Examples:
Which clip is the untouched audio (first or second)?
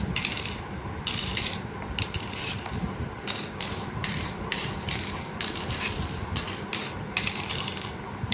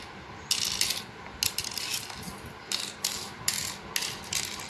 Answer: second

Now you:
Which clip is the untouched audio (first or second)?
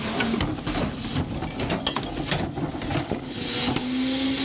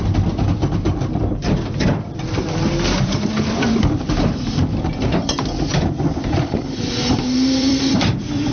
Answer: first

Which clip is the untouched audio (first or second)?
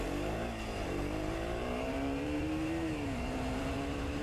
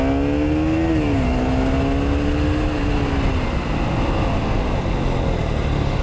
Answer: second